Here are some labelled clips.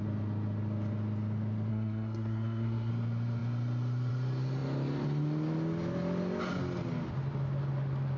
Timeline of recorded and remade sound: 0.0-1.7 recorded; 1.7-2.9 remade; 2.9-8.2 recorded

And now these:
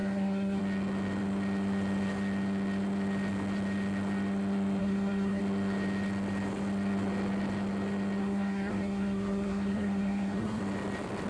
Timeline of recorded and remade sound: 0.0-0.6 remade; 0.6-4.8 recorded; 4.8-5.4 remade; 5.4-8.2 recorded; 8.2-10.6 remade; 10.6-11.3 recorded

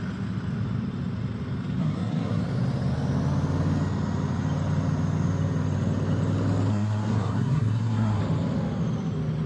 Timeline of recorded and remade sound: 0.0-1.8 recorded; 1.8-2.4 remade; 2.4-6.7 recorded; 6.7-8.2 remade; 8.2-9.5 recorded

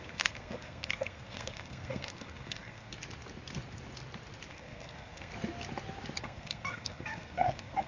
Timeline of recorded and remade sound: 0.0-2.9 remade; 2.9-4.5 recorded; 4.5-5.3 remade; 5.3-6.2 recorded; 6.2-7.9 remade

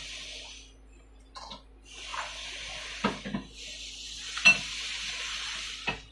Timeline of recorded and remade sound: 0.0-6.1 recorded

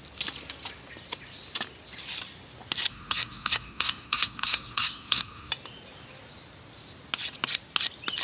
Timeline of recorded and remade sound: 0.0-2.9 recorded; 2.9-5.5 remade; 5.5-8.2 recorded

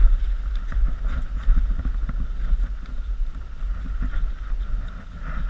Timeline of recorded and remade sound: 0.0-5.5 recorded